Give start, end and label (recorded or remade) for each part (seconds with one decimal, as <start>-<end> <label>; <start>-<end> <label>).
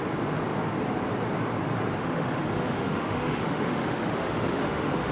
0.0-2.0 recorded; 2.0-5.1 remade